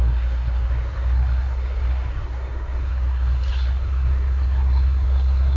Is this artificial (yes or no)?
yes